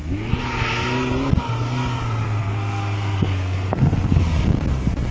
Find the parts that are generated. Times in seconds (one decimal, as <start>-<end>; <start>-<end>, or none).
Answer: 2.4-4.2